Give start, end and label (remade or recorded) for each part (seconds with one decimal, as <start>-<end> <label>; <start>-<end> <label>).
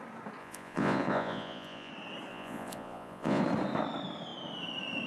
0.0-0.4 recorded; 0.4-1.9 remade; 1.9-2.3 recorded; 2.3-3.4 remade; 3.4-5.1 recorded